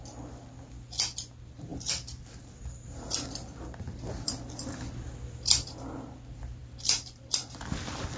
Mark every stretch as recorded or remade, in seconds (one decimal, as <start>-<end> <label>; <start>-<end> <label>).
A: 0.0-6.6 recorded; 6.6-7.6 remade; 7.6-8.2 recorded